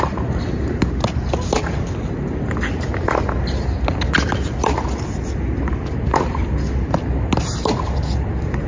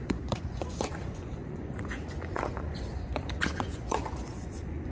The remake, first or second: second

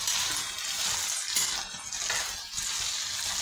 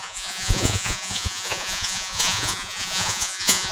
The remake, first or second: second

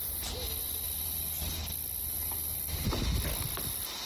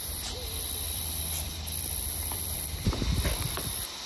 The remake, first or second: second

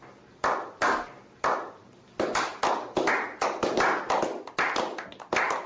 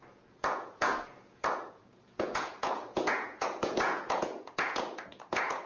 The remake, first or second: second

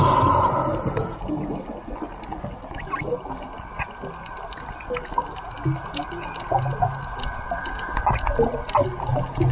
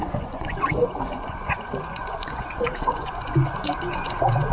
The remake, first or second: second